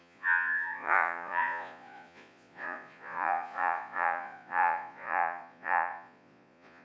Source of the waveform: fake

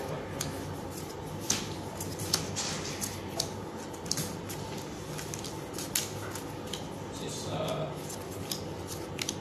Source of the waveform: real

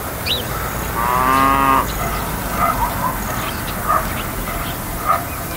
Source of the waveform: real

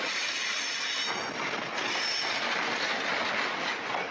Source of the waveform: real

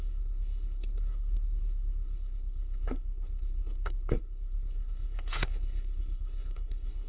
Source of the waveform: fake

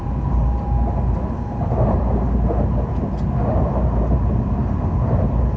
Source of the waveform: real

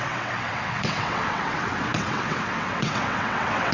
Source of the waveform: fake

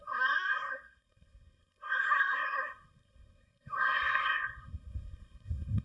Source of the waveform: fake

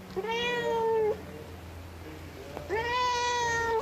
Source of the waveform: real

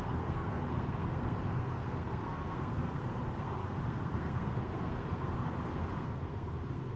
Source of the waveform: fake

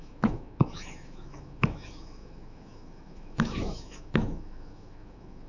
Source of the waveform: fake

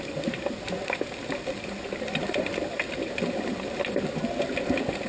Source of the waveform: real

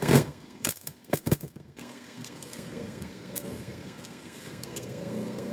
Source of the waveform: fake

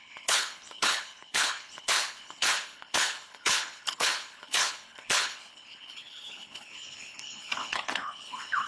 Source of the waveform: fake